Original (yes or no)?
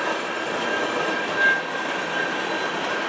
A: yes